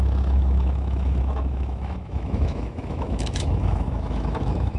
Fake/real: fake